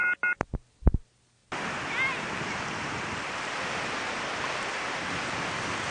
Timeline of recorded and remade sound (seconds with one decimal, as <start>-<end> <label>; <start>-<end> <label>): 0.0-5.9 recorded